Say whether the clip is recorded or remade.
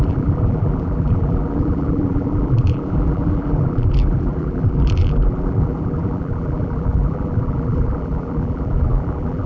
remade